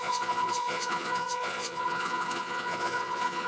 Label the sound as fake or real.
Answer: fake